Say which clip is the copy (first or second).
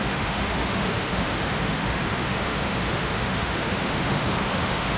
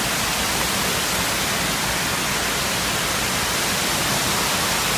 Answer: first